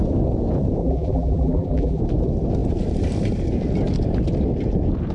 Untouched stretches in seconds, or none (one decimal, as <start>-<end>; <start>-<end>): 0.0-0.8; 2.0-5.1